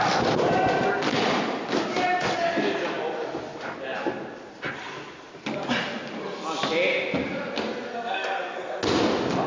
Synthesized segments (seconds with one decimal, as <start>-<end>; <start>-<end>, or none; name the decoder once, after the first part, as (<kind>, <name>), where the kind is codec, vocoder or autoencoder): 7.9-8.8 (codec, SNAC)